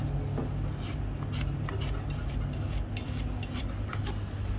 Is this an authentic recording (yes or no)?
yes